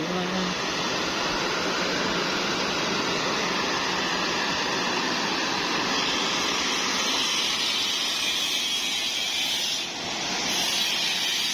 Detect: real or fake real